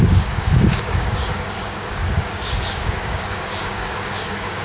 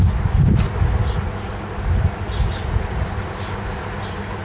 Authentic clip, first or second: second